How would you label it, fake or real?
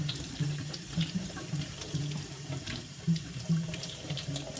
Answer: fake